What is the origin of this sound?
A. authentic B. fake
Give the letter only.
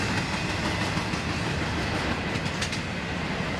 A